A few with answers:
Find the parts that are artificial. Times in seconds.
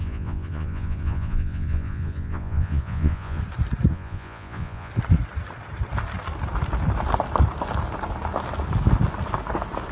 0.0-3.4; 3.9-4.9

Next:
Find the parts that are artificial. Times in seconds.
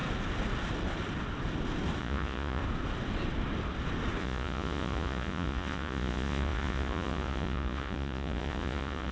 2.0-2.6; 4.2-9.1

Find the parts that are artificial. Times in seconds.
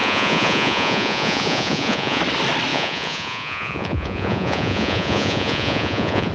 0.0-2.2; 2.7-6.3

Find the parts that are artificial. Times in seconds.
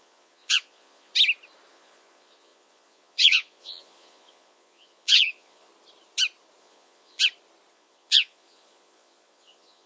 0.0-1.1; 1.7-5.7; 6.6-7.2; 7.7-9.9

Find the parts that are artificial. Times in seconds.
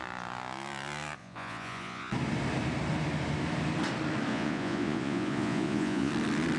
1.2-2.1; 4.3-6.1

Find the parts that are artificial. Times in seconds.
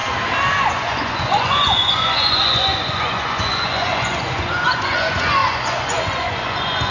0.6-6.9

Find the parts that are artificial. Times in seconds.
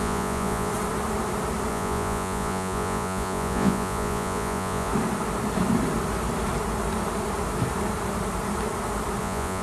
0.0-0.7; 1.7-4.9; 9.2-9.6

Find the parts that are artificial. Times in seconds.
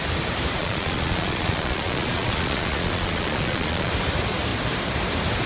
0.6-3.9